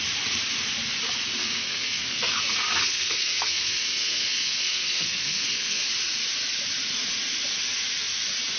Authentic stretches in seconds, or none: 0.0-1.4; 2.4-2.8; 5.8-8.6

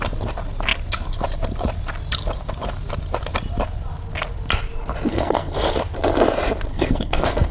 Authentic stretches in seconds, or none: 0.0-5.1; 5.8-6.7

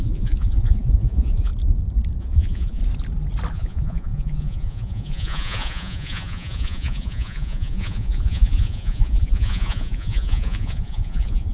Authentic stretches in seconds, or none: 1.5-2.2; 2.8-3.5

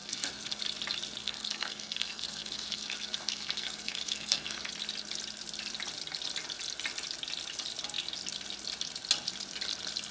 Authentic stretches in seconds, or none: 0.6-1.2; 4.7-10.1

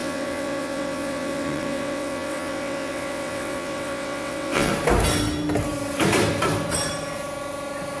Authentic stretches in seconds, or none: 4.7-8.0

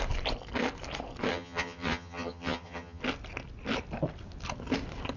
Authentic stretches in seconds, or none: 0.0-1.3; 3.0-5.2

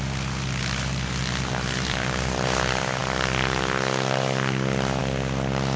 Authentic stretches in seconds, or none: 0.0-5.8

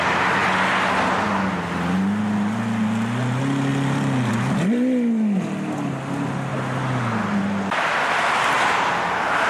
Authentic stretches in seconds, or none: 0.0-9.5